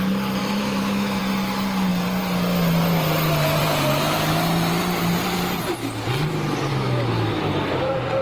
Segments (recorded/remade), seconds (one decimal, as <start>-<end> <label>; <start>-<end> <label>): 0.0-0.4 recorded; 0.4-1.2 remade; 1.2-6.7 recorded; 6.7-7.5 remade; 7.5-8.2 recorded